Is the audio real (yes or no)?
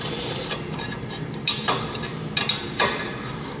no